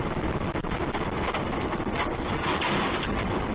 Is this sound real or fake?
real